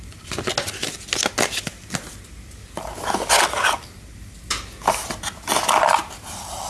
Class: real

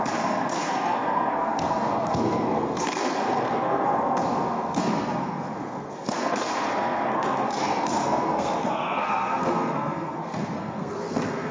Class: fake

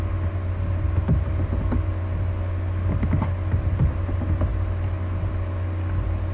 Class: real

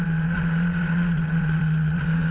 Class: fake